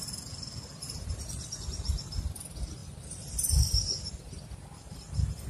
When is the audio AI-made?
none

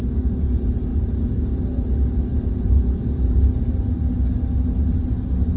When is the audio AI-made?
0.9-1.4 (vocoder, BigVGAN v2)

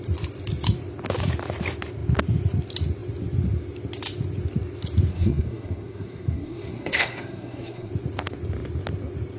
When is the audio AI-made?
5.1-7.9 (codec, SNAC)

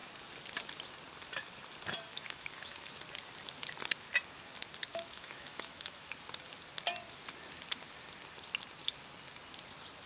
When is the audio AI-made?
2.1-3.0 (autoencoder, DAC-VAE); 4.9-6.1